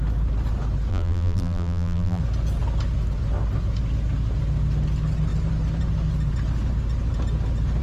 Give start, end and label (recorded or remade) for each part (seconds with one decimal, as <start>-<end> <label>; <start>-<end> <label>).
0.0-0.9 recorded; 0.9-2.2 remade; 2.2-7.8 recorded